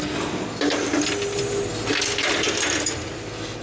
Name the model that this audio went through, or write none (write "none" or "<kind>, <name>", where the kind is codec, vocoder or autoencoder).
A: none